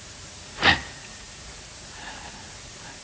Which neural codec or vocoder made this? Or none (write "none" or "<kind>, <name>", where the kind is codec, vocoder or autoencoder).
vocoder, Vocos